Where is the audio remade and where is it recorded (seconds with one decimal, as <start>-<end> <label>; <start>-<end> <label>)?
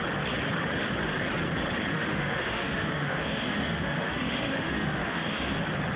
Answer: 0.0-1.9 recorded; 1.9-5.5 remade; 5.5-6.0 recorded